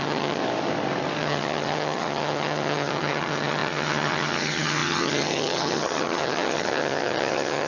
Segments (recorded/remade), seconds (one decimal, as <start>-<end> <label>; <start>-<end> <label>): 0.0-0.4 remade; 0.4-1.2 recorded; 1.2-7.7 remade